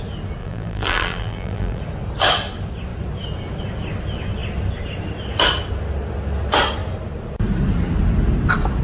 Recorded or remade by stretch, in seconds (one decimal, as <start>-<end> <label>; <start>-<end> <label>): 0.0-0.4 recorded; 0.4-1.8 remade; 1.8-8.8 recorded